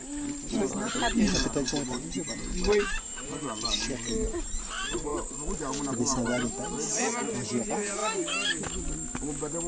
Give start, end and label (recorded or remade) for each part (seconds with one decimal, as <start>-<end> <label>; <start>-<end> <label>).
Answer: 0.0-5.1 remade; 5.1-7.3 recorded; 7.3-8.0 remade; 8.0-9.7 recorded